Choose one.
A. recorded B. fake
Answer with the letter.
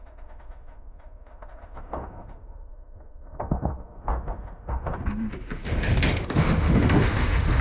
B